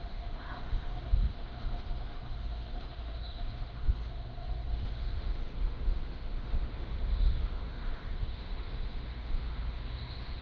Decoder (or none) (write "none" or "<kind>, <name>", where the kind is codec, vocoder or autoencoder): autoencoder, DAC-VAE